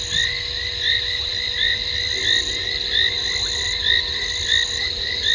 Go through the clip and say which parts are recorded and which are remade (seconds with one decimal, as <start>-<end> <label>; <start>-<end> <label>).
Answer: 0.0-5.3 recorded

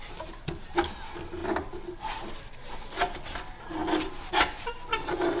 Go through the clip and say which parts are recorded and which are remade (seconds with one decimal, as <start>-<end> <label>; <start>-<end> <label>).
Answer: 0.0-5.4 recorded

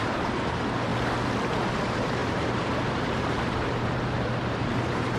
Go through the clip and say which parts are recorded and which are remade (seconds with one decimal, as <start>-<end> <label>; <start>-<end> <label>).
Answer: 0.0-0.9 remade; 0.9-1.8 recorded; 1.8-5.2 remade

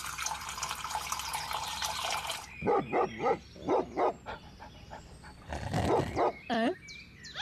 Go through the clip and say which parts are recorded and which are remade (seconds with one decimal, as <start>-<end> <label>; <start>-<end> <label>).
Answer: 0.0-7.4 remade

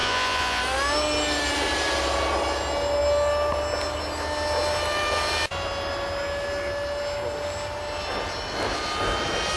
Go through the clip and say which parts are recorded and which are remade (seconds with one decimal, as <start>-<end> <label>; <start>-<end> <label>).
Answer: 0.0-0.6 remade; 0.6-9.6 recorded

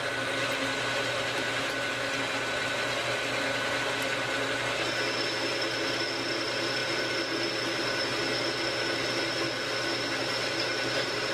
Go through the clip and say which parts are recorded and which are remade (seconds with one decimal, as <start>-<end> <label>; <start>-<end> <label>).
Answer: 0.0-11.3 recorded